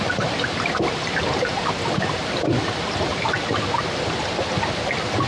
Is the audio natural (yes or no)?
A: yes